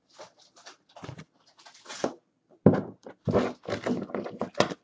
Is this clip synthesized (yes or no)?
no